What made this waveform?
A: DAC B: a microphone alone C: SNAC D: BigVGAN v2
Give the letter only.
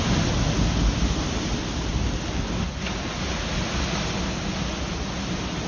B